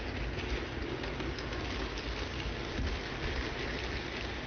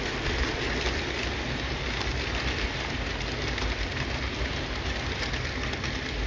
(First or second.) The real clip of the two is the first